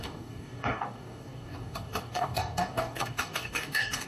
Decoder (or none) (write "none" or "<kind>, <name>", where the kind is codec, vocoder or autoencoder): codec, DAC